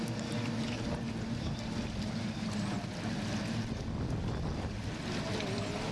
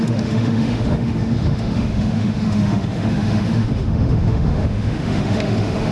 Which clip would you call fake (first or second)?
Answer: second